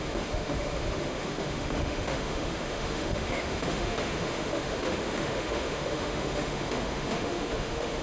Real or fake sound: fake